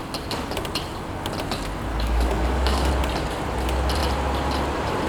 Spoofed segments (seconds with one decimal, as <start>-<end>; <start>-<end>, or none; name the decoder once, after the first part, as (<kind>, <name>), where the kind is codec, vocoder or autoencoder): 1.9-2.9 (codec, DAC)